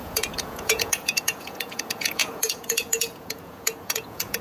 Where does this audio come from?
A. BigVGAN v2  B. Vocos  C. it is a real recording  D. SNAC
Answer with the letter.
B